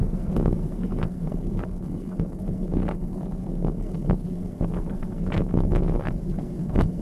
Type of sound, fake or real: fake